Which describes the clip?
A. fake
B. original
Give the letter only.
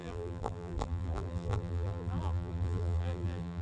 A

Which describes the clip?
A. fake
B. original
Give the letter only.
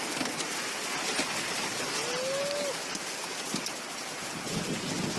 B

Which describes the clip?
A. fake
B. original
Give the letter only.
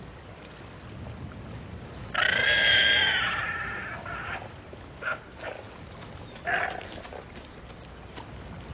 B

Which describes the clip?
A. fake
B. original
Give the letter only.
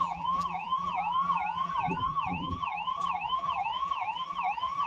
A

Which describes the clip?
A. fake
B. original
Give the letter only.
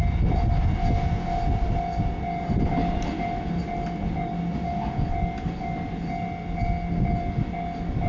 B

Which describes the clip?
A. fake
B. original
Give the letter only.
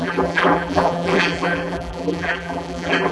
A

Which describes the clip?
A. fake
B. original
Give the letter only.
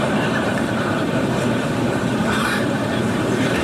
A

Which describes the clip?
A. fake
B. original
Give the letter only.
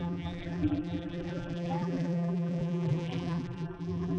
A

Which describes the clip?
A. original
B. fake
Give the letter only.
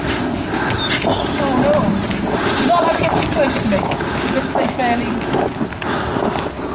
A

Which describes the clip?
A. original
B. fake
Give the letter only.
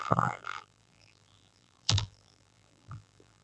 B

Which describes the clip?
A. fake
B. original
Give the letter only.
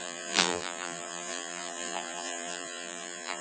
A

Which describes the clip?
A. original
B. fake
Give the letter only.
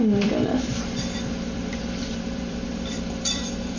B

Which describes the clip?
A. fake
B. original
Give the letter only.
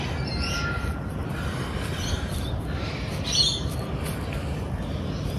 B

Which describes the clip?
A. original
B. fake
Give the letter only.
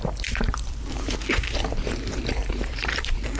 B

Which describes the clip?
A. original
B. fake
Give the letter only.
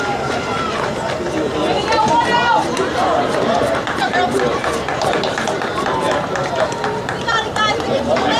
B